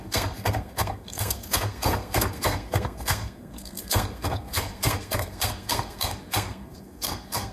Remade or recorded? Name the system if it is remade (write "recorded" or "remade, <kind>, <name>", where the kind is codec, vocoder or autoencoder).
remade, codec, SNAC